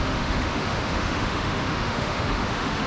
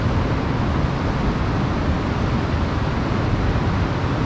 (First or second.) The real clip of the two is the second